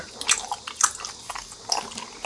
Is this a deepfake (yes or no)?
no